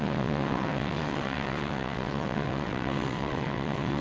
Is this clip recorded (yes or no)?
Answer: no